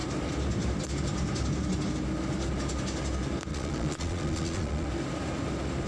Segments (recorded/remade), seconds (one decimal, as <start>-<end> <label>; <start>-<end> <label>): 0.0-3.5 recorded; 3.5-4.9 remade; 4.9-5.9 recorded